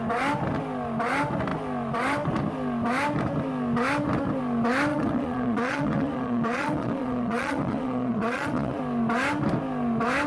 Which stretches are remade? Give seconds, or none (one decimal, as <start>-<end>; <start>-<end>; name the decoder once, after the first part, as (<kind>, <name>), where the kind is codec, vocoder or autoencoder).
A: 4.9-8.8 (vocoder, Vocos)